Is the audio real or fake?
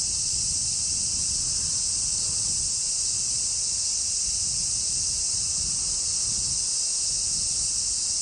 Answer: real